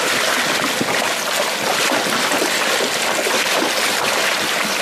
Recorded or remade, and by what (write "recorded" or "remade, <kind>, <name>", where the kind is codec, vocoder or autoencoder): recorded